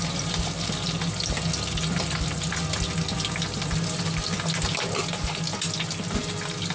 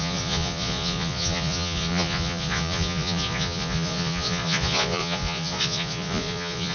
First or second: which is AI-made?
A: second